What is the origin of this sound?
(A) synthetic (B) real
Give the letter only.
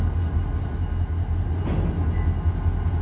B